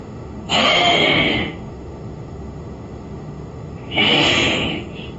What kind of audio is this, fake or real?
fake